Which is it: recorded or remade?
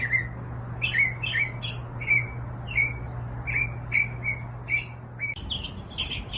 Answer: recorded